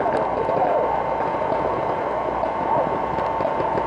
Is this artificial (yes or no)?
no